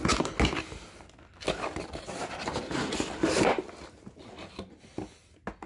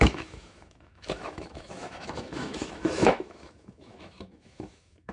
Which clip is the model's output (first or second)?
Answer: second